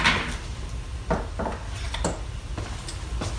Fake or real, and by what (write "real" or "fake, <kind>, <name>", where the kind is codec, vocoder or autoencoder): real